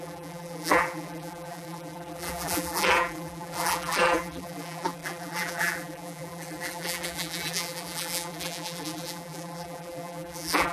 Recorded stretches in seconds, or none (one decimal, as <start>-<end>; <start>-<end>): none